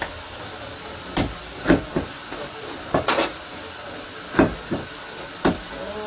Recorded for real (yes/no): yes